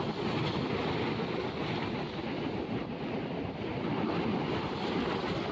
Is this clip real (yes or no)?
yes